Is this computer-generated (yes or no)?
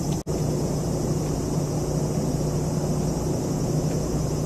no